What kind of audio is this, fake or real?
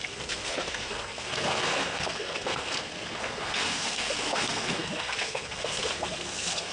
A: fake